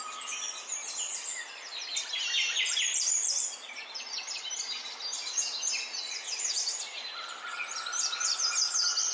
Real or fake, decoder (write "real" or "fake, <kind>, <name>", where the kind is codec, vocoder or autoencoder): real